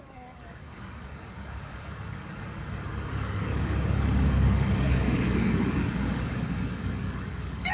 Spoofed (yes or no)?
yes